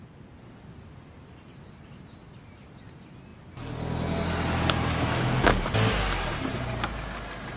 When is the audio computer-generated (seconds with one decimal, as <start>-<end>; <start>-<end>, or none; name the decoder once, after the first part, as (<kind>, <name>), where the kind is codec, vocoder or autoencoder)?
none